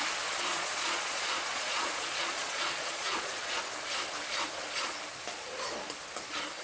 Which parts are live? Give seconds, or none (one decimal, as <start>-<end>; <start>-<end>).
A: 0.0-0.5; 3.6-6.6